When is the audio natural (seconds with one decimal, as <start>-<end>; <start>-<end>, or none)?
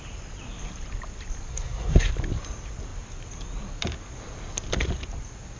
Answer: 0.0-1.5; 2.1-5.6